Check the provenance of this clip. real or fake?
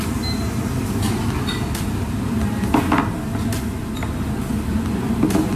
real